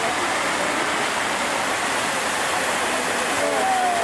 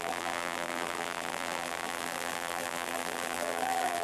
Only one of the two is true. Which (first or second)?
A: first